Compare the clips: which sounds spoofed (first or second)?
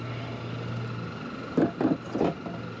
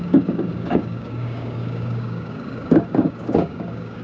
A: second